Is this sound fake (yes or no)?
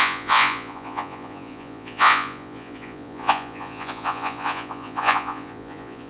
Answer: yes